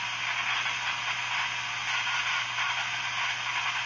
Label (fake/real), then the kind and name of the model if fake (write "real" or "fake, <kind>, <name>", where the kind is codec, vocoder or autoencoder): real